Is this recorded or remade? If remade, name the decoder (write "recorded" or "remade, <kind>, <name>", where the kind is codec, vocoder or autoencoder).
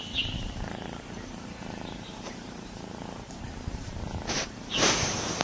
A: remade, vocoder, BigVGAN v2